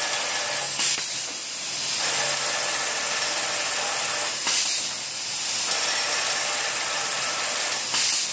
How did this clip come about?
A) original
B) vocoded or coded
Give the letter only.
A